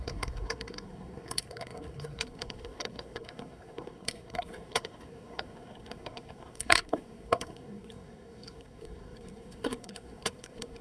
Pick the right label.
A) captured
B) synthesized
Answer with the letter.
B